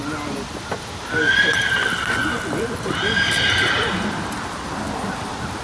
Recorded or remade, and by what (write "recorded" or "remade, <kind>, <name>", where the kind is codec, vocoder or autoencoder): recorded